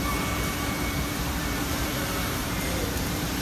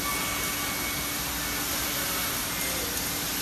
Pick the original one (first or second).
second